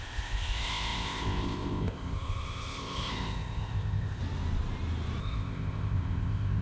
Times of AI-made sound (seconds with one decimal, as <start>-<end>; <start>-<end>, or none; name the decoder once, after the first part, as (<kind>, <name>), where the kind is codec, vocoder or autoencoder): 0.0-4.2 (codec, ZipCodec); 5.2-6.6